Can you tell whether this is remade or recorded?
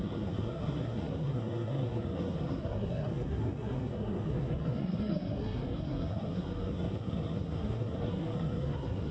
remade